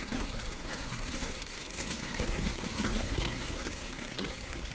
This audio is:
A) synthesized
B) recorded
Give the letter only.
A